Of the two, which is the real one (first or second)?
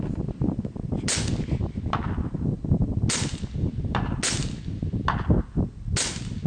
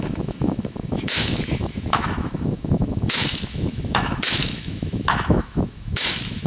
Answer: first